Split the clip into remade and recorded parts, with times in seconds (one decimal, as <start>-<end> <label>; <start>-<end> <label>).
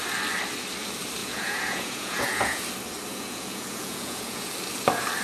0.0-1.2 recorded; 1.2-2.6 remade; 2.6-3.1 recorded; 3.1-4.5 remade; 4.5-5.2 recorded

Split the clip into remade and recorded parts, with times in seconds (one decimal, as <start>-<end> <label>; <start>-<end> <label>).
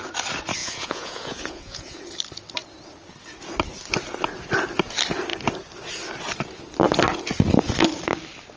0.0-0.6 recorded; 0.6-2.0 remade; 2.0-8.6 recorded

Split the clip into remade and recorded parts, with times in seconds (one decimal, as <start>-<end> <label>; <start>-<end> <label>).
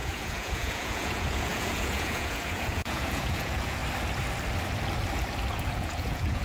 0.0-3.8 remade; 3.8-5.5 recorded; 5.5-6.4 remade